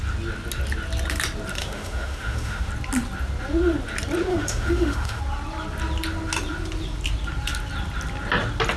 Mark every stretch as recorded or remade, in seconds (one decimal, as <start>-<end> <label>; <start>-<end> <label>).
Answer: 0.0-1.6 recorded; 1.6-2.7 remade; 2.7-4.3 recorded; 4.3-5.2 remade; 5.2-8.8 recorded